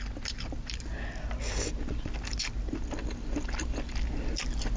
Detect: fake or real real